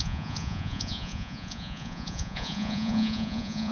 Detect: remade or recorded remade